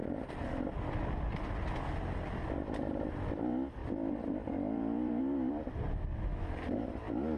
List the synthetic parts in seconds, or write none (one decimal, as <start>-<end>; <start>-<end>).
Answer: 3.8-5.2